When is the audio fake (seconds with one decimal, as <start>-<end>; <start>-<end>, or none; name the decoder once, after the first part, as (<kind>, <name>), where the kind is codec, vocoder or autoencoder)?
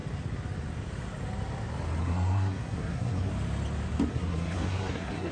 2.0-3.3 (codec, SNAC); 4.1-5.3